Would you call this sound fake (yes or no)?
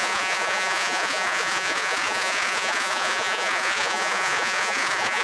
yes